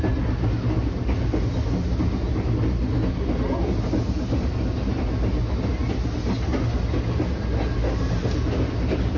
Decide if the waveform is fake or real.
real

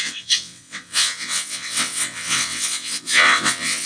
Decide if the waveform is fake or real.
fake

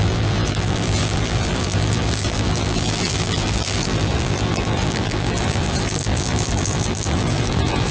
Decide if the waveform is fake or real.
fake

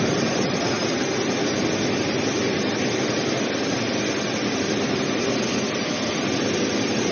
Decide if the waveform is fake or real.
real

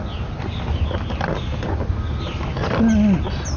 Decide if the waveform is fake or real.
real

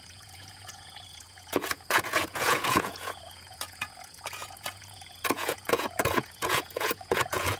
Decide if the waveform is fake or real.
fake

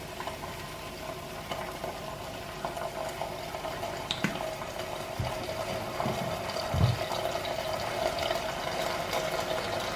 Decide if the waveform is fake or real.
fake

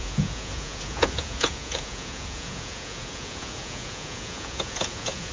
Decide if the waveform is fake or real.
fake